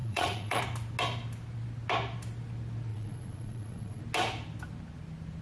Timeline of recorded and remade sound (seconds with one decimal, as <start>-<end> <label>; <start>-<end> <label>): 0.0-0.6 remade; 0.6-2.9 recorded; 2.9-4.0 remade; 4.0-5.4 recorded